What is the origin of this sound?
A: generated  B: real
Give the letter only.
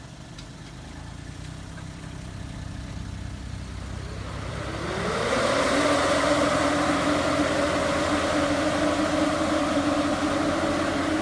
B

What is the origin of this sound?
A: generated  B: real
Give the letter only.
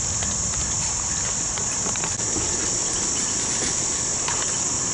B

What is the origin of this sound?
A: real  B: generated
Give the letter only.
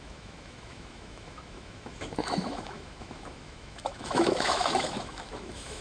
B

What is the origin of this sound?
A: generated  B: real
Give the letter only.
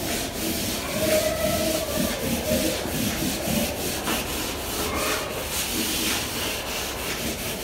B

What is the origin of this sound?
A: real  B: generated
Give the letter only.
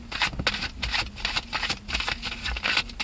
A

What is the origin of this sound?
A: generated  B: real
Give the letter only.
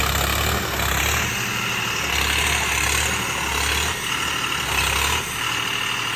B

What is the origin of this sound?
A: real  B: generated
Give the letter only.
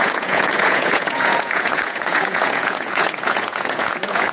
B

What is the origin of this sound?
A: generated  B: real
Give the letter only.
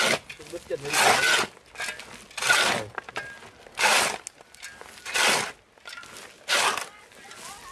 B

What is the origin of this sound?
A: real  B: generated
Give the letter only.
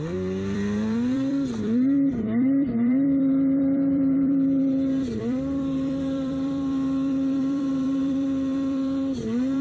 B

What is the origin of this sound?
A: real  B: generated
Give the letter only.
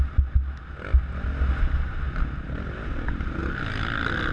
A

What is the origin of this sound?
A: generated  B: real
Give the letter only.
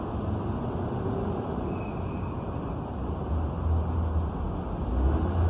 B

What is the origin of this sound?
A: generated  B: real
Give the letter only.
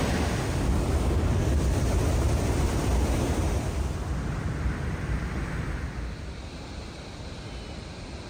B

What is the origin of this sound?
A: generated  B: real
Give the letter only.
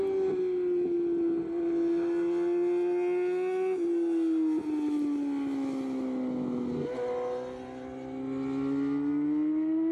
B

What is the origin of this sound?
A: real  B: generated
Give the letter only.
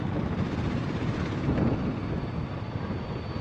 A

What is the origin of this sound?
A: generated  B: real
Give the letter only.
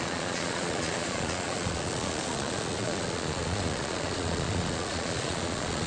A